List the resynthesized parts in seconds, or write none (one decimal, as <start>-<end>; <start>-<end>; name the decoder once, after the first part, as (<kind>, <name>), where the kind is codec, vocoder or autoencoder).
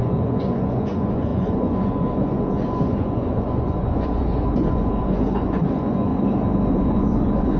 0.0-6.1 (vocoder, Vocos); 6.7-7.6